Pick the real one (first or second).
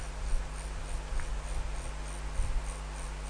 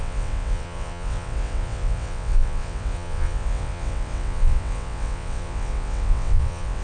first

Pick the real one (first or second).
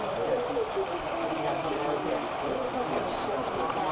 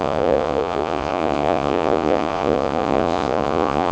first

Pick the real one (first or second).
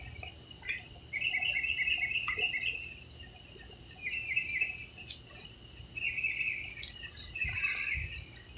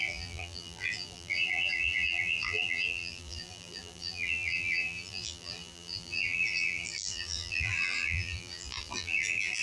first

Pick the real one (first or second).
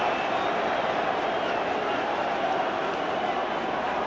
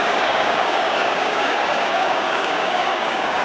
first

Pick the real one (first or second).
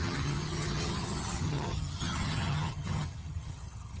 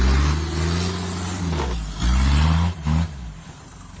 second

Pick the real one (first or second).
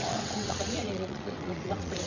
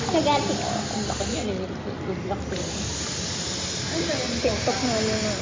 second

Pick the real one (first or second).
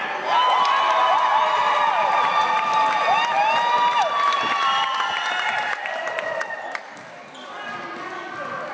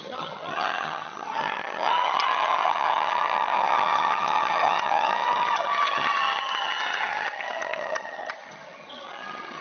first